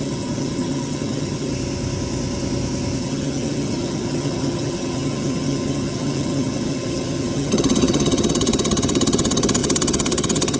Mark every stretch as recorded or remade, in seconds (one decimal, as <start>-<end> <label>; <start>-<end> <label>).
0.0-1.5 remade; 1.5-3.0 recorded; 3.0-10.6 remade